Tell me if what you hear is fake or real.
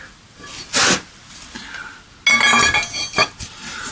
real